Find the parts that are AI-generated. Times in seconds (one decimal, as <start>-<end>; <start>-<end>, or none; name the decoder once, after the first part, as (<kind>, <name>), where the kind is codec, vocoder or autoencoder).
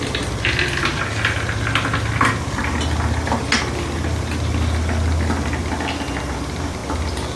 none